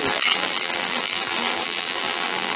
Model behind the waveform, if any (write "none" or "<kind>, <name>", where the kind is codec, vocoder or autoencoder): vocoder, BigVGAN v2